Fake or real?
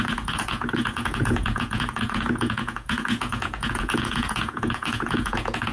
fake